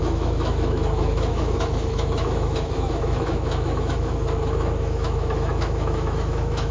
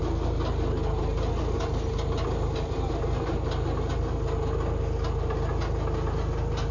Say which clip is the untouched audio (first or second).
second